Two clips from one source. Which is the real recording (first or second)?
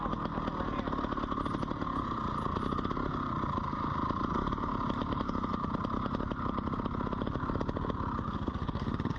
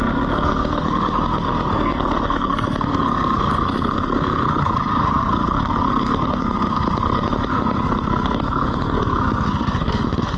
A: first